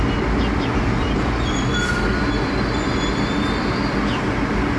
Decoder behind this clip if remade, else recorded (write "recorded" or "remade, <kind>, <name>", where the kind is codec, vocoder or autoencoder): recorded